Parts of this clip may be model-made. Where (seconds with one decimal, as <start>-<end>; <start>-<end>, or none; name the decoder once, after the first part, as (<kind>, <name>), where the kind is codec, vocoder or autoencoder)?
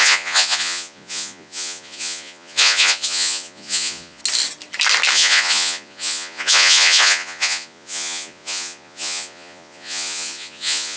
0.0-4.2 (vocoder, Vocos); 5.1-11.0